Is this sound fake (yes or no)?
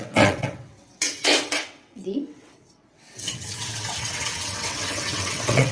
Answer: yes